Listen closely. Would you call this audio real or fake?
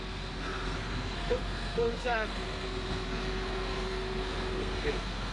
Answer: fake